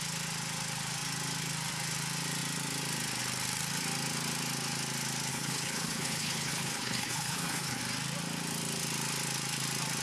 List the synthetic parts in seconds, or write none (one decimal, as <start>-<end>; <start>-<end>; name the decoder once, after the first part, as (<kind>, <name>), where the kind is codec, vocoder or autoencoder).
5.3-7.8 (codec, HILCodec)